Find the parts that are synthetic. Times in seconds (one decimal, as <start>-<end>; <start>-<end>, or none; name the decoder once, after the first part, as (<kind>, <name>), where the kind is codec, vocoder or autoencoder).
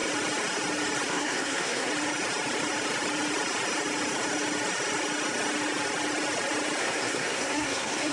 1.1-1.9 (codec, SNAC); 6.8-8.1